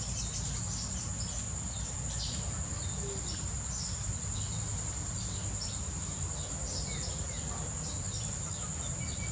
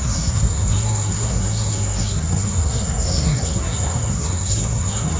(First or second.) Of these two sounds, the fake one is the second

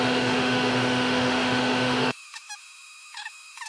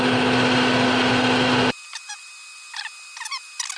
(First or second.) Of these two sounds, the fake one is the first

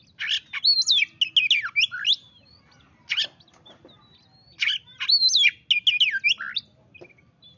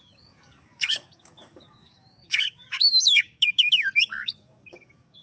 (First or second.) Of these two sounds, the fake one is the second